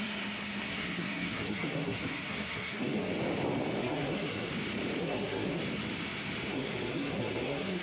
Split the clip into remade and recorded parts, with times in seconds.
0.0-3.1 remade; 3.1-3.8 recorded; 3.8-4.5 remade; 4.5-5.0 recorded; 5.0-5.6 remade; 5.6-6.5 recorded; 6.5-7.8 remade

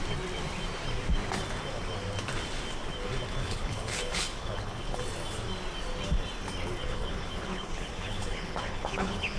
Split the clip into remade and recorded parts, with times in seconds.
0.0-3.4 recorded; 3.4-5.0 remade; 5.0-6.8 recorded; 6.8-9.4 remade

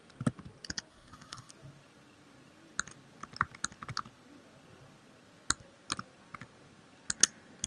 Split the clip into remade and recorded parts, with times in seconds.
0.0-0.9 recorded; 0.9-1.5 remade; 1.5-7.7 recorded

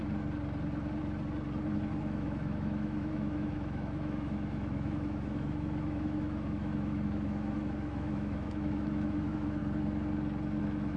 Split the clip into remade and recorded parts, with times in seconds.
0.0-2.0 recorded; 2.0-9.6 remade; 9.6-10.6 recorded; 10.6-11.0 remade

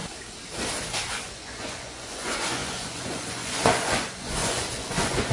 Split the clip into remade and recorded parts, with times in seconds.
0.0-1.1 recorded; 1.1-5.3 remade

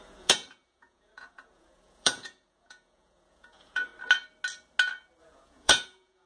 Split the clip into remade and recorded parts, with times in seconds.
0.0-3.9 remade; 3.9-5.2 recorded; 5.2-6.3 remade

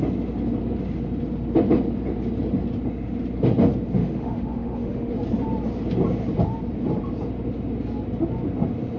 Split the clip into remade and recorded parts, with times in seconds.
0.0-4.0 recorded; 4.0-5.1 remade; 5.1-9.0 recorded